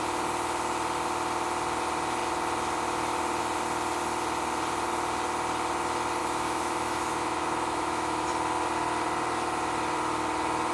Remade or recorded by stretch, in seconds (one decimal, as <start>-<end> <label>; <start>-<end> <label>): 0.0-6.2 recorded; 6.2-8.3 remade; 8.3-10.7 recorded